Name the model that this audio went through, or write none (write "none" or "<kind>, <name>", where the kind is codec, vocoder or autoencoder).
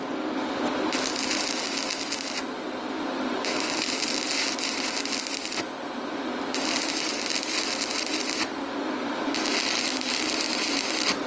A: none